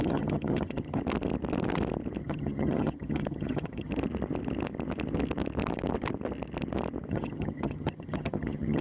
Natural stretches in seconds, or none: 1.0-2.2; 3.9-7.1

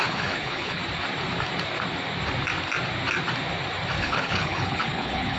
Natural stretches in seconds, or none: 0.8-4.0

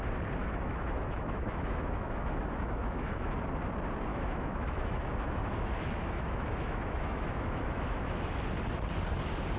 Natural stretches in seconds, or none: 0.0-0.4; 3.3-4.1; 8.4-9.6

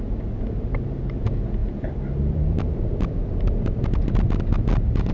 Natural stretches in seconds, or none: 0.0-1.6; 4.3-5.1

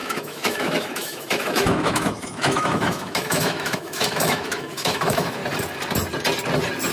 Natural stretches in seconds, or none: 5.4-6.9

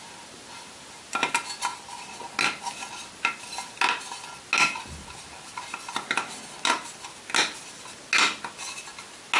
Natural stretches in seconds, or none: 0.0-9.4